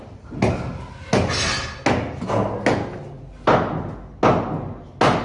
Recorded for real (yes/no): yes